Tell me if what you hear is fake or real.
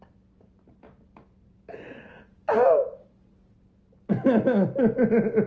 real